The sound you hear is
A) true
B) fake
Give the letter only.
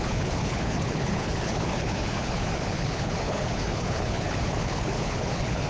B